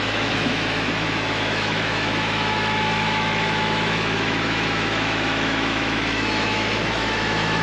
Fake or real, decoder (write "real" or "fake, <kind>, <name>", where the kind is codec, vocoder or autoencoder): fake, autoencoder, DAC-VAE